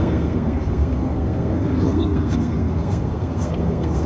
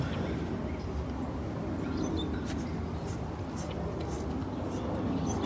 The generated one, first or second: first